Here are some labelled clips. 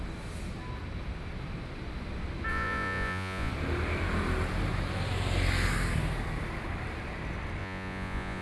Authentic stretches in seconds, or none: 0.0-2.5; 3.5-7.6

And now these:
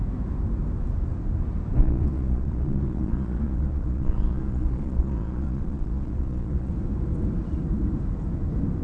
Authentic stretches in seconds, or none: 0.0-1.8; 6.7-8.8

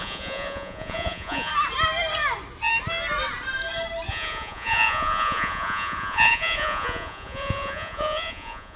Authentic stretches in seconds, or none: 1.5-4.1